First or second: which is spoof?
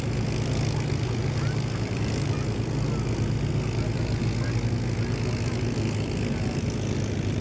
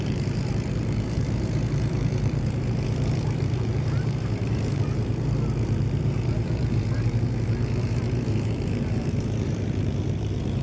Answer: second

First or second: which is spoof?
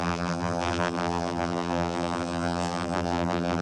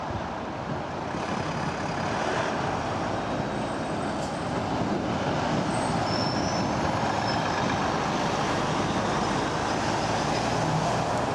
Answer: first